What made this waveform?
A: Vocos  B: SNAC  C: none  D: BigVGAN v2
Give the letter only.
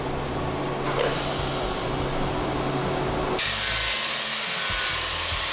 C